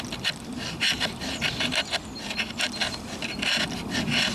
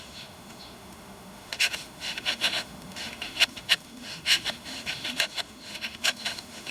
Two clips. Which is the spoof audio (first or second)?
second